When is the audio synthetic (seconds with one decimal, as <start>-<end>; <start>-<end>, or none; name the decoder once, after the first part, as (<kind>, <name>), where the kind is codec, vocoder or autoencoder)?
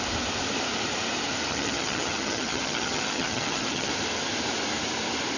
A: 1.5-3.9 (vocoder, HiFi-GAN)